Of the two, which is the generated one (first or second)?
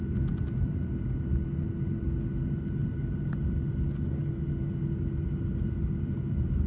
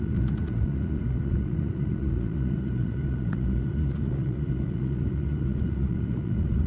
second